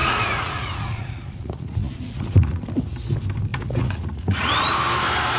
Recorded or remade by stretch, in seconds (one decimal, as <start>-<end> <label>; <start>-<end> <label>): 0.0-2.6 remade; 2.6-3.5 recorded; 3.5-4.5 remade; 4.5-5.4 recorded